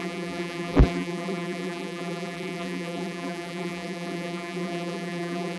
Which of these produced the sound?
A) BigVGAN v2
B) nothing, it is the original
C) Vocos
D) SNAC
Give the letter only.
A